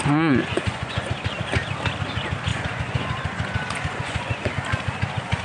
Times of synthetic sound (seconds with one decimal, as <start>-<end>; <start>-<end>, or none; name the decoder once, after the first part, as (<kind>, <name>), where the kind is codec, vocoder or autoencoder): 0.4-1.1 (vocoder, Vocos); 2.5-4.5